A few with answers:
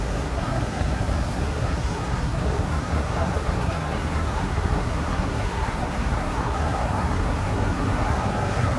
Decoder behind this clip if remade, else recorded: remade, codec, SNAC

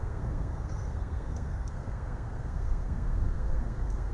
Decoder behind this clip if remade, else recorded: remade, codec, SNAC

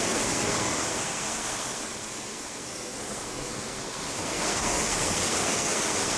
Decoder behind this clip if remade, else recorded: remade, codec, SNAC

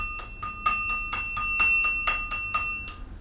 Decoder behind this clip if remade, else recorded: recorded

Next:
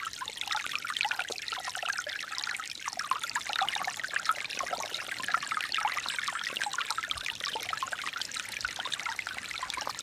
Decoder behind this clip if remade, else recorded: recorded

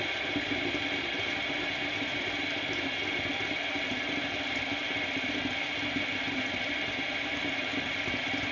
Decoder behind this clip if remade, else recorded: recorded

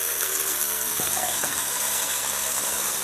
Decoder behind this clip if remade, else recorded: remade, codec, SNAC